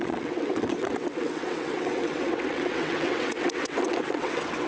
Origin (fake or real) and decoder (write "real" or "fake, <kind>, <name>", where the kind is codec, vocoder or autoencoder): fake, vocoder, WaveNeXt